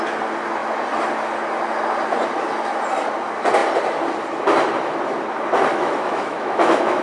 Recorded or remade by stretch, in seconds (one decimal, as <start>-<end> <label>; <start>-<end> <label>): 0.0-5.7 recorded; 5.7-7.0 remade